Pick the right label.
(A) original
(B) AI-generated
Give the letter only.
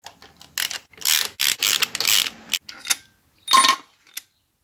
A